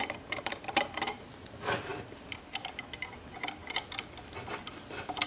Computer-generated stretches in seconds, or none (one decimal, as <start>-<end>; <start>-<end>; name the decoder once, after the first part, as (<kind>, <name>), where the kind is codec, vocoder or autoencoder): none